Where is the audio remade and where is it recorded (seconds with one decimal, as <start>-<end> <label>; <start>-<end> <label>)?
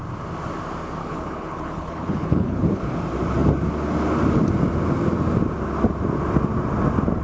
0.0-1.0 recorded; 1.0-3.0 remade; 3.0-7.2 recorded